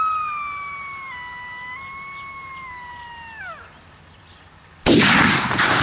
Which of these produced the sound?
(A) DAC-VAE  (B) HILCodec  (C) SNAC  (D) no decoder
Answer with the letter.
D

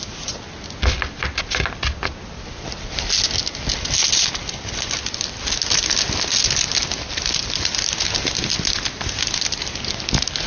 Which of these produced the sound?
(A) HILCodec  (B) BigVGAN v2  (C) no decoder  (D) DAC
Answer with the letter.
C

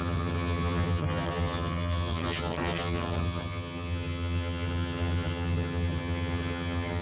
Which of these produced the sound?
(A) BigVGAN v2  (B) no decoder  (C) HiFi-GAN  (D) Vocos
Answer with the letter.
C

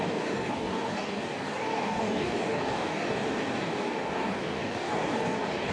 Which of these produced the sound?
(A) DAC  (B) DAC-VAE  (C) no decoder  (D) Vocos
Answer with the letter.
A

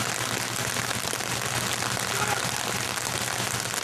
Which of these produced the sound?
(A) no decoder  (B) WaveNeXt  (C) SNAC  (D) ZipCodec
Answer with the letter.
A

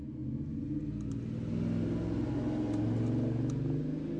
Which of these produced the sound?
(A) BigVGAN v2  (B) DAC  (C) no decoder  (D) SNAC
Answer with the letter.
C